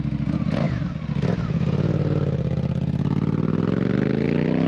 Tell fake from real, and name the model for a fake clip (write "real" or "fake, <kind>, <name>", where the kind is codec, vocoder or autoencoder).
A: real